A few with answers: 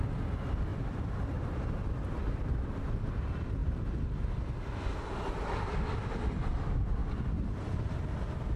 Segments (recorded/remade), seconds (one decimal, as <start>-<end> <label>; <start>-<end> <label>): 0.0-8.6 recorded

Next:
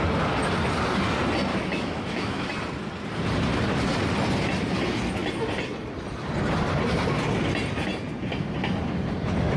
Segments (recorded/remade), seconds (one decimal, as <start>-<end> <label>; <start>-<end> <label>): 0.0-1.5 recorded; 1.5-2.5 remade; 2.5-9.6 recorded

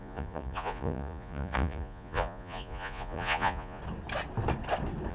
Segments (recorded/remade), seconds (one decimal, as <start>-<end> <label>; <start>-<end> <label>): 0.0-3.8 remade; 3.8-5.1 recorded

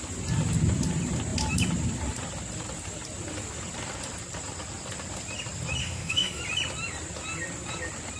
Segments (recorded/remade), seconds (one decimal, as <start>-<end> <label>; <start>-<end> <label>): 0.0-5.8 recorded; 5.8-6.4 remade; 6.4-8.2 recorded

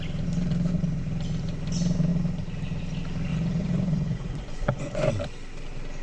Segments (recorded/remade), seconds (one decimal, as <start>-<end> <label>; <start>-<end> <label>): 0.0-3.3 recorded; 3.3-5.1 remade; 5.1-6.0 recorded

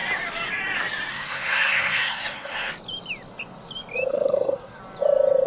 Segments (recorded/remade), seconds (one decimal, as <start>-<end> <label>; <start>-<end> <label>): 0.0-1.1 recorded; 1.1-2.7 remade; 2.7-4.1 recorded; 4.1-4.8 remade; 4.8-5.5 recorded

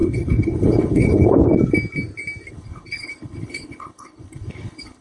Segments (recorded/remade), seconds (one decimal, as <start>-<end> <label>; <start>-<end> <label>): 0.0-1.4 remade; 1.4-2.5 recorded; 2.5-5.0 remade